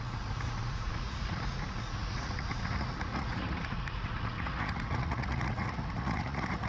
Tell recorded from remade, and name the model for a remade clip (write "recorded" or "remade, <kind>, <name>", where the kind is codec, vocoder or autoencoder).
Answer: remade, vocoder, Vocos